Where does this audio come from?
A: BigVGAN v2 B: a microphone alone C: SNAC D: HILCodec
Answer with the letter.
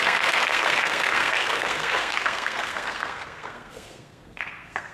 C